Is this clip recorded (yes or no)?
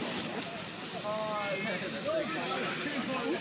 yes